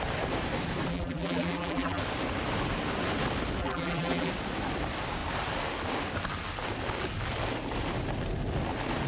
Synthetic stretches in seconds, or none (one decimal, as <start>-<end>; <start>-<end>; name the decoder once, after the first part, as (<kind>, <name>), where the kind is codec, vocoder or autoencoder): 0.9-2.0 (vocoder, BigVGAN v2); 3.6-4.3